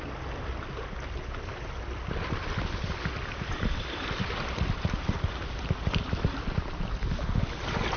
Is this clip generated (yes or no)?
no